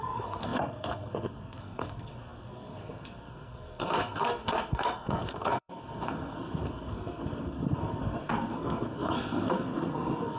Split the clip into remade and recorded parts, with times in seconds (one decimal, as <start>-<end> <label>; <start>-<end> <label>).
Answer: 0.0-10.4 remade